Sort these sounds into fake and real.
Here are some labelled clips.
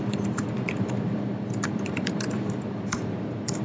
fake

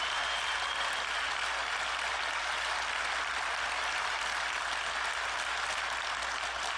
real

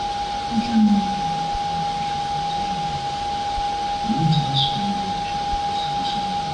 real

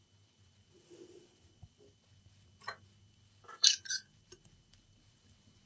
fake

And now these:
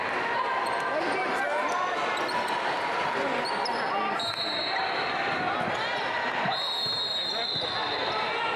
real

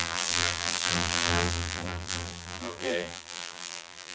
fake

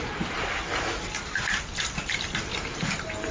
real